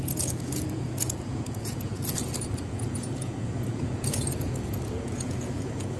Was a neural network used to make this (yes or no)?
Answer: yes